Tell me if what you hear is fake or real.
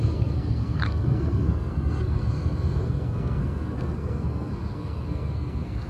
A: fake